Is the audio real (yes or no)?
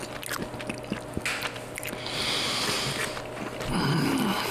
yes